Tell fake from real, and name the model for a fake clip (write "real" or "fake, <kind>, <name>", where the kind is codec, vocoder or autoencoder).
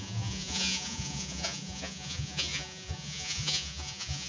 fake, vocoder, Vocos